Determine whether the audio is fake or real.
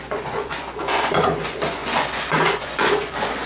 fake